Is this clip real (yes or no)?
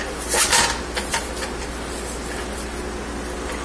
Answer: yes